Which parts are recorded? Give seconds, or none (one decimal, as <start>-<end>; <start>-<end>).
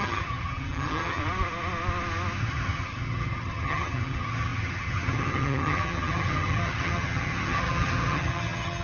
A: 1.2-2.4